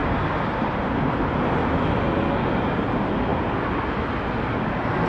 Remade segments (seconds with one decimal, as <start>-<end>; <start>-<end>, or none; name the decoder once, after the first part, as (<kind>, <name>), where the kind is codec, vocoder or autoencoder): none